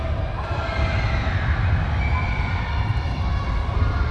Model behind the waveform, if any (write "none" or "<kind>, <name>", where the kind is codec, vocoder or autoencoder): none